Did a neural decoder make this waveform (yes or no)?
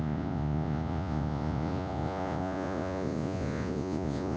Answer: yes